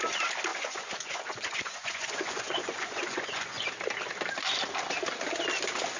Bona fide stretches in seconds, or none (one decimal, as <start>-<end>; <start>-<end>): 0.0-0.5; 3.7-6.0